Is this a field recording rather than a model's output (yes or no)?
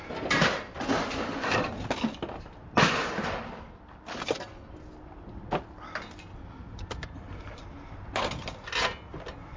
yes